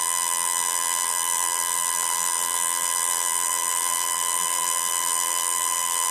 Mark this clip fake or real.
fake